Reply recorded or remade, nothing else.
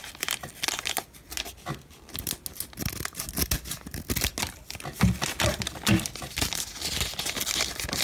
recorded